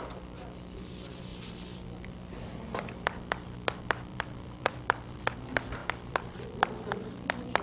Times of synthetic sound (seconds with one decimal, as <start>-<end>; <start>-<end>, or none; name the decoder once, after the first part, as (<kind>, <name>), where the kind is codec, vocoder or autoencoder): 1.3-4.7 (vocoder, BigVGAN v2); 5.8-7.1